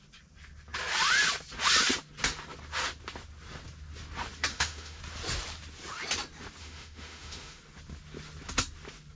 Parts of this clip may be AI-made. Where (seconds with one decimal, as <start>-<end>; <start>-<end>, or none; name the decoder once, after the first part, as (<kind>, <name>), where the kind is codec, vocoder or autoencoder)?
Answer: 4.5-5.0 (autoencoder, DAC-VAE); 6.6-7.6